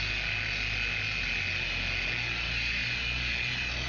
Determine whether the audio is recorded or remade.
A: recorded